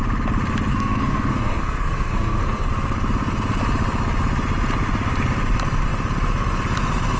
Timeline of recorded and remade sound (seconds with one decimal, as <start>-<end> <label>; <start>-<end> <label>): 0.0-0.7 recorded; 0.7-2.7 remade; 2.7-7.2 recorded